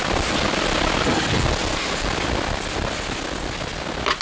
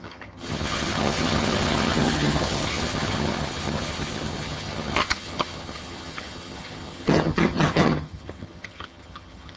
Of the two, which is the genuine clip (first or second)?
first